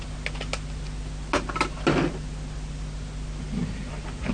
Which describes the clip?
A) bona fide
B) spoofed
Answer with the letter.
A